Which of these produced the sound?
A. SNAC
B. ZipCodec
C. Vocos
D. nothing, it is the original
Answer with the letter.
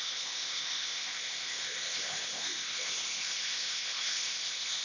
B